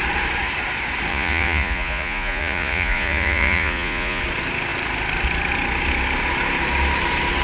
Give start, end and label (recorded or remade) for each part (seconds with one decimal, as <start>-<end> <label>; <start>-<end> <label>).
0.0-1.1 recorded; 1.1-4.2 remade; 4.2-7.4 recorded